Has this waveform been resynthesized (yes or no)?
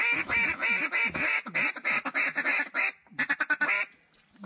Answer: no